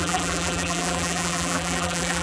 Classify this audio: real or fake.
fake